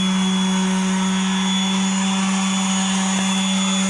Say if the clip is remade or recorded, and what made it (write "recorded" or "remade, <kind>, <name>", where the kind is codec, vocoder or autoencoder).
recorded